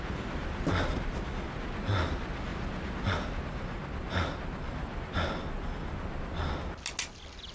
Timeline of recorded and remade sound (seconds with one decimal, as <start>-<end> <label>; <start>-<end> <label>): 0.0-7.5 recorded